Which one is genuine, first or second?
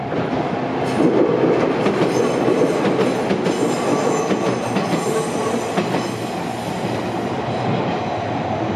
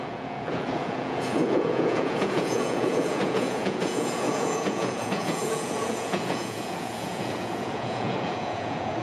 first